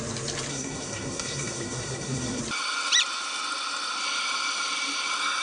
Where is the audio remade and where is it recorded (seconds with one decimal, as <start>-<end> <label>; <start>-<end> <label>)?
0.0-0.5 recorded; 0.5-2.4 remade; 2.4-5.4 recorded